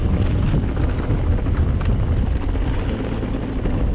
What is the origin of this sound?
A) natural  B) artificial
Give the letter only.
A